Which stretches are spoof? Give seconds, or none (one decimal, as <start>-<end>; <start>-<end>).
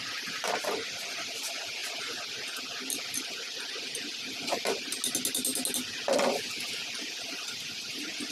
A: none